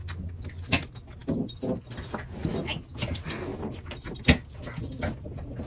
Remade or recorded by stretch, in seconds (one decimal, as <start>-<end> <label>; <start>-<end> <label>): 0.0-3.5 recorded; 3.5-4.2 remade; 4.2-5.7 recorded